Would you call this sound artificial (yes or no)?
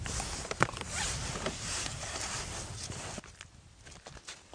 no